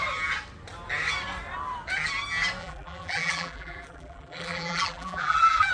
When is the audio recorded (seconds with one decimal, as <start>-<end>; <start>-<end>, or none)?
0.0-2.6